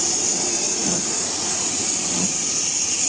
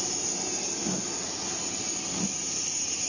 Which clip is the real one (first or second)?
second